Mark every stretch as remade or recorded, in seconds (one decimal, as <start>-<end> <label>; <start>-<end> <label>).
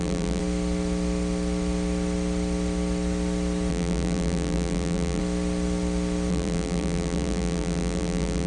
0.0-0.4 remade; 0.4-3.7 recorded; 3.7-5.2 remade; 5.2-6.3 recorded; 6.3-8.5 remade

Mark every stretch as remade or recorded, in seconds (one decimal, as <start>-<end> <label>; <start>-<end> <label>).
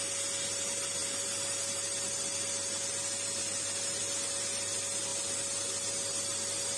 0.0-6.8 recorded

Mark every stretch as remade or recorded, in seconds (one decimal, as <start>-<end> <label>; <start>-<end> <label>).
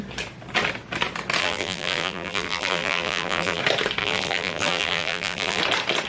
0.0-1.4 recorded; 1.4-3.6 remade; 3.6-4.0 recorded; 4.0-5.6 remade; 5.6-6.1 recorded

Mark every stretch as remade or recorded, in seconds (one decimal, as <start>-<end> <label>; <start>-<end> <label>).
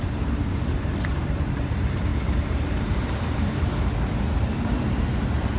0.0-5.6 remade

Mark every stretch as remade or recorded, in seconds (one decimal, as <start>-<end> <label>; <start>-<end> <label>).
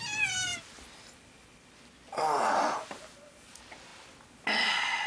0.0-5.1 recorded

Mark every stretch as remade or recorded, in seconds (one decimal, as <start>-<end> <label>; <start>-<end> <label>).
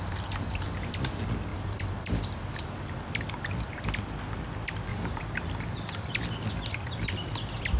0.0-1.5 recorded; 1.5-2.4 remade; 2.4-4.9 recorded; 4.9-5.5 remade; 5.5-7.8 recorded